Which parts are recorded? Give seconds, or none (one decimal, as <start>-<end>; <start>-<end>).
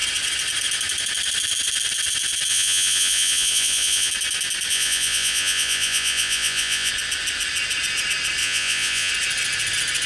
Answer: 0.0-2.5; 4.1-4.7; 6.9-8.4; 9.1-10.1